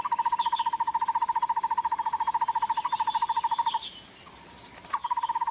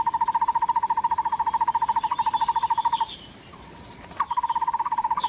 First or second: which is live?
first